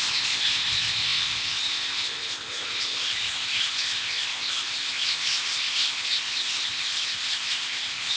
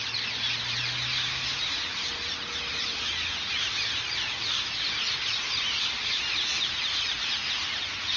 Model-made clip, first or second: first